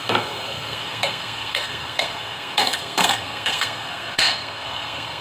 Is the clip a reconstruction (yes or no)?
yes